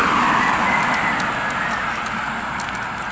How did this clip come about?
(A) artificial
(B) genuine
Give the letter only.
B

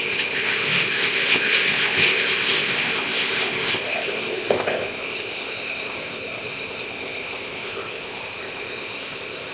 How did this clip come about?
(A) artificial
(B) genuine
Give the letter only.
A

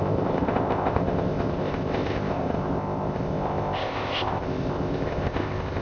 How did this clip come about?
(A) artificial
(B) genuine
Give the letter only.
A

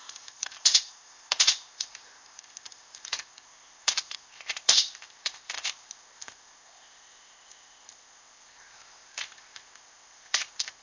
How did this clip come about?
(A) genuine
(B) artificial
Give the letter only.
B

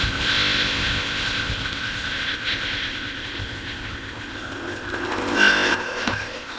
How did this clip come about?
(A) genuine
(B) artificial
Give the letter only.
B